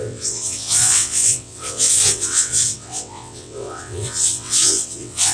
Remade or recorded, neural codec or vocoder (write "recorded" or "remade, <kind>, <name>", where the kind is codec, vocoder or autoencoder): remade, vocoder, WaveNeXt